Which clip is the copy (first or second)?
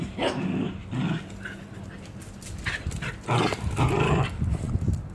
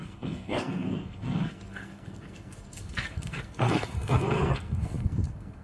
second